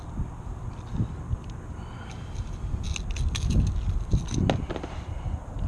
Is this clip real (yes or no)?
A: yes